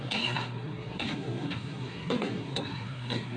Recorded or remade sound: remade